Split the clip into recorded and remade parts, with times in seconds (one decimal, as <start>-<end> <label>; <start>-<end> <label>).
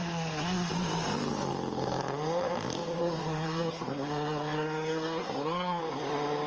0.0-0.7 remade; 0.7-3.0 recorded; 3.0-5.8 remade; 5.8-6.5 recorded